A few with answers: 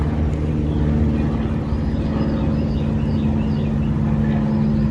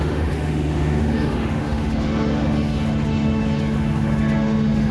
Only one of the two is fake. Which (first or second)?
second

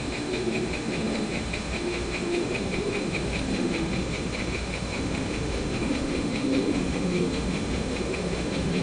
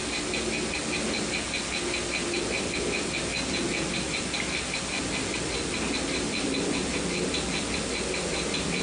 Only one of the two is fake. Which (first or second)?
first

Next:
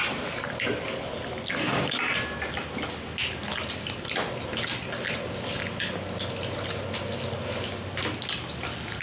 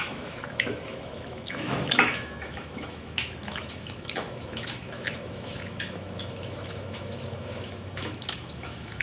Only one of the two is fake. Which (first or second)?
second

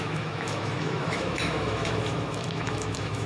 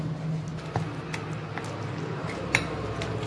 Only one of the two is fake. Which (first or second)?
first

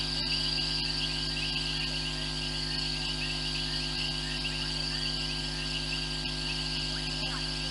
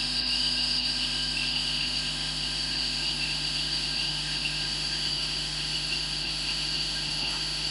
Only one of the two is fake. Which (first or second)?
second